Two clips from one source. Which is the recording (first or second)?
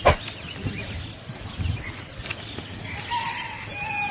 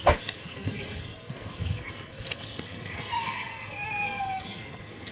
first